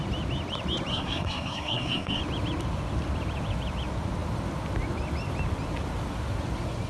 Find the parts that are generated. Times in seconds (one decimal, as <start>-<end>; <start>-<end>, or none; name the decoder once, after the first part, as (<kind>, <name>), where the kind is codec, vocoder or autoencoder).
0.9-2.2 (codec, SNAC)